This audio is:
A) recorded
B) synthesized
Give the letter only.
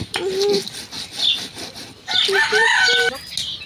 A